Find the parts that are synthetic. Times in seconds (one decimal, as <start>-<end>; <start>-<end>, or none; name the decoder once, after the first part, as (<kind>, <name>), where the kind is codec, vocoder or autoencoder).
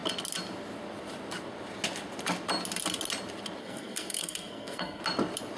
3.6-5.0 (codec, SNAC)